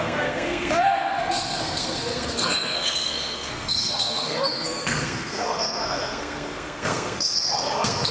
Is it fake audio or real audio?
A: fake